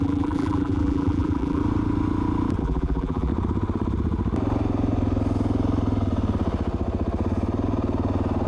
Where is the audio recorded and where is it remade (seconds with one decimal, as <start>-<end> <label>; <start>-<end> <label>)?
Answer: 0.0-1.6 remade; 1.6-2.6 recorded; 2.6-3.3 remade; 3.3-8.5 recorded